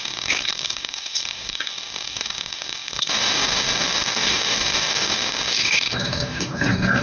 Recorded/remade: remade